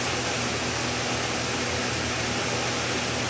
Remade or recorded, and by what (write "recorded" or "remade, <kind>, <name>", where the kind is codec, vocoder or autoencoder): recorded